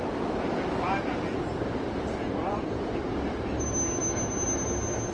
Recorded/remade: recorded